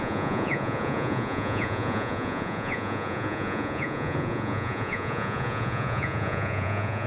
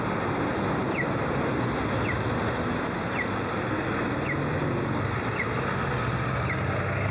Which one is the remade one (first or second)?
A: first